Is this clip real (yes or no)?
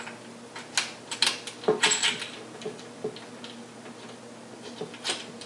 yes